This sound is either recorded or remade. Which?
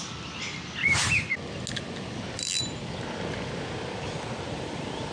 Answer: recorded